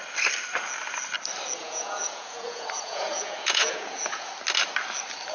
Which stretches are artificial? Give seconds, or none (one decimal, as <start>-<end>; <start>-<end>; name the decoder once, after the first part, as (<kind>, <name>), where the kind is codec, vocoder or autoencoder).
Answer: 1.6-4.3 (vocoder, Vocos)